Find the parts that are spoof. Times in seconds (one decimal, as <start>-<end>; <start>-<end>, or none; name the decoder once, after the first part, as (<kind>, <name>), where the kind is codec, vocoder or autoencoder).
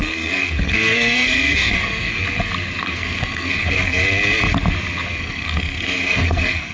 0.0-2.2 (codec, SNAC); 2.8-4.0; 5.2-6.7